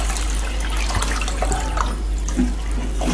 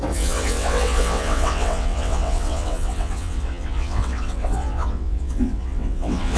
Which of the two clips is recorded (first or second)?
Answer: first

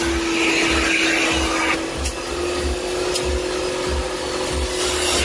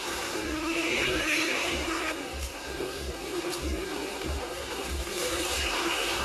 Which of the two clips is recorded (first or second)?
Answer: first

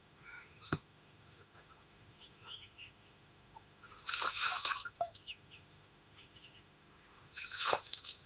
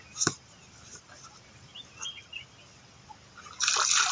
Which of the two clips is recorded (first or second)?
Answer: second